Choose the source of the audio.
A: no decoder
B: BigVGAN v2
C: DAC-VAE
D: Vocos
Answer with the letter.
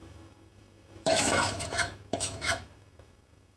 C